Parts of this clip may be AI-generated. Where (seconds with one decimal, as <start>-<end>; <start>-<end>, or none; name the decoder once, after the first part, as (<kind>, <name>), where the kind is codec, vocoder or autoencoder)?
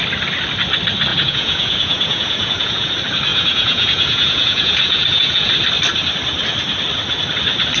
1.1-2.9 (vocoder, Vocos); 3.3-5.5